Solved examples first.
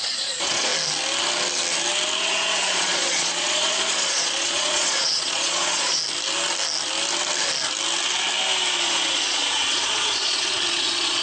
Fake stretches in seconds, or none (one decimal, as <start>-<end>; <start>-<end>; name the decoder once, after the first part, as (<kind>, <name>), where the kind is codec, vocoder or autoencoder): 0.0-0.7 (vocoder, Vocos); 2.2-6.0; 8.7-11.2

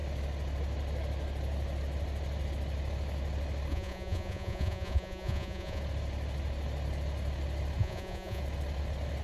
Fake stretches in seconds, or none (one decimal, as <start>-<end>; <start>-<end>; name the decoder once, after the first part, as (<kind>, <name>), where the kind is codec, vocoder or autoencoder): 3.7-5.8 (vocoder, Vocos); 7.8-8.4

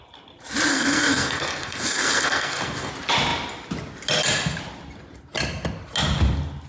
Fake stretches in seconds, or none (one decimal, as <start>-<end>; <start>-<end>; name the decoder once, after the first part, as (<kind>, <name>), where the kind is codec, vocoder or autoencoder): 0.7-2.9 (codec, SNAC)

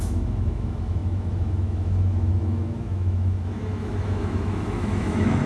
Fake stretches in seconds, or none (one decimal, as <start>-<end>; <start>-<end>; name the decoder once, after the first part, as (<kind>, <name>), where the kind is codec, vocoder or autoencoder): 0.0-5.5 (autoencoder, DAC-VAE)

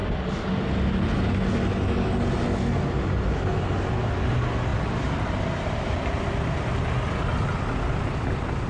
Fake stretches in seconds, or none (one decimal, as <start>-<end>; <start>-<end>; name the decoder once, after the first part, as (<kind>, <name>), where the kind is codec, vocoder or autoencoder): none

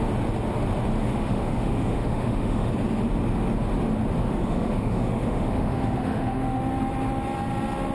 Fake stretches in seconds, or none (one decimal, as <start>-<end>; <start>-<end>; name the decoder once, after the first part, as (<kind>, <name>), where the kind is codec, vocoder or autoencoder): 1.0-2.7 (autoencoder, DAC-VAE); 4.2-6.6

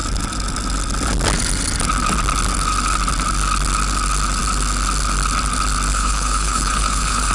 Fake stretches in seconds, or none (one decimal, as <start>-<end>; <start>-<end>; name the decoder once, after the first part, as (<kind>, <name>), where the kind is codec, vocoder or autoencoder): 5.9-7.3 (codec, HILCodec)